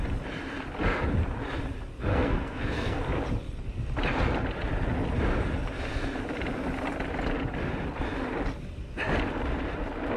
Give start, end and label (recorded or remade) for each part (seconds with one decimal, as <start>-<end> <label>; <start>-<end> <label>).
0.0-2.1 recorded; 2.1-3.0 remade; 3.0-10.2 recorded